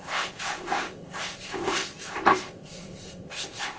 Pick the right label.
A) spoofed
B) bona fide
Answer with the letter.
A